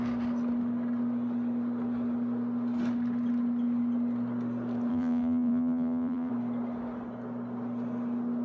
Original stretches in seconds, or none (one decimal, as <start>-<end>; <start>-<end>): 0.0-4.9; 6.3-8.4